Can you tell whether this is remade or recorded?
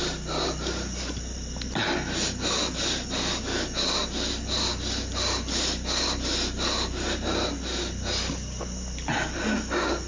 recorded